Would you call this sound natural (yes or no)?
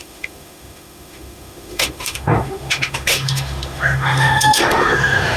no